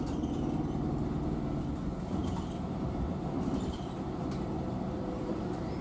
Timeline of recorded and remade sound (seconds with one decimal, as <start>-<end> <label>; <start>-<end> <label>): 0.0-2.2 recorded; 2.2-5.8 remade